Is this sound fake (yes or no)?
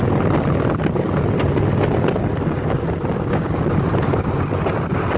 no